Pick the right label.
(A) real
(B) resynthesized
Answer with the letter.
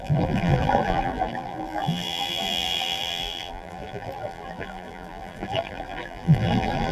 B